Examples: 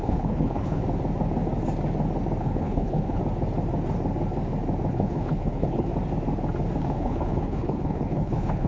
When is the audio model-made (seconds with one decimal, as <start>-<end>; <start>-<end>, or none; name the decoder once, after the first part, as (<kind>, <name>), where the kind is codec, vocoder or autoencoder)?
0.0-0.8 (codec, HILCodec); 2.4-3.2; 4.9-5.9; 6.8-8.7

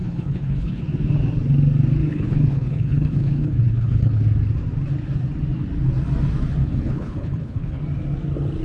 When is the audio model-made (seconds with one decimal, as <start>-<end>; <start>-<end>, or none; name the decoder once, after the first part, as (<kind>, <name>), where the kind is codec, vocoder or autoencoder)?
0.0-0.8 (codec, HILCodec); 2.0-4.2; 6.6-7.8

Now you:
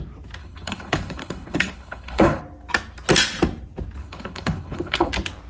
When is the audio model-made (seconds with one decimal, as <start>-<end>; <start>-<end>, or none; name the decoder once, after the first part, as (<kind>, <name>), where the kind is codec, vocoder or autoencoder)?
0.4-2.4 (codec, HILCodec); 4.0-5.1

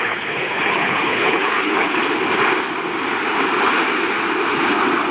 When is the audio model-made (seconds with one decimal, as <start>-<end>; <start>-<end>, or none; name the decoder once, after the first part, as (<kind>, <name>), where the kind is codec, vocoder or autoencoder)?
0.0-2.0 (codec, HILCodec)

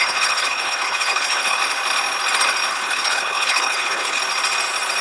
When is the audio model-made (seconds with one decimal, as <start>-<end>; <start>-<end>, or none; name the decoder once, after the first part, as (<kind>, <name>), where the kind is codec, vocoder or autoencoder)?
0.0-1.6 (codec, HILCodec); 2.7-4.2

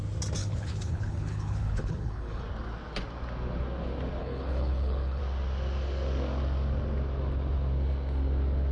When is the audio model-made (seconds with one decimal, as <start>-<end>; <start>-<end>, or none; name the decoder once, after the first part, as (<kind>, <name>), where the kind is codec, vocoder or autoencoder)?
0.4-2.4 (codec, HILCodec); 4.2-5.2

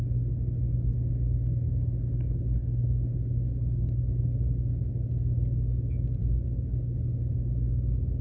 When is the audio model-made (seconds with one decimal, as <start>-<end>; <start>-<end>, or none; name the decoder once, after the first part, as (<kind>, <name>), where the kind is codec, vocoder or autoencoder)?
2.6-4.9 (codec, HILCodec)